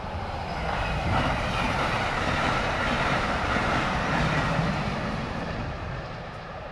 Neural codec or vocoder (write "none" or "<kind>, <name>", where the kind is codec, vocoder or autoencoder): vocoder, BigVGAN v2